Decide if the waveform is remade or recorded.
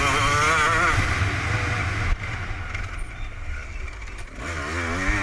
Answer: recorded